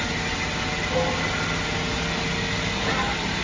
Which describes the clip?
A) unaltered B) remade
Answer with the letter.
A